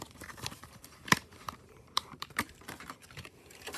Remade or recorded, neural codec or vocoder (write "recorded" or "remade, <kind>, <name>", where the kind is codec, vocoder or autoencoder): remade, vocoder, BigVGAN v2